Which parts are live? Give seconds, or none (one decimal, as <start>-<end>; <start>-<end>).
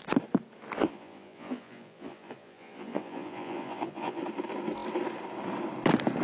0.0-0.8; 4.2-6.2